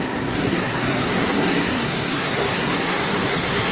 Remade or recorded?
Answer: remade